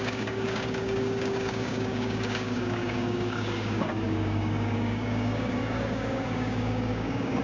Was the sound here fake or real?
fake